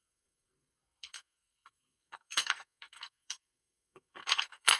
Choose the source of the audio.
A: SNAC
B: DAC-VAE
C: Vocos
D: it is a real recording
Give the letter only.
A